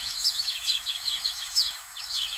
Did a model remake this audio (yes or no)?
yes